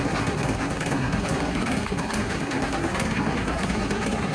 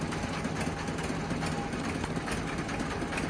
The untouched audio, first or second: second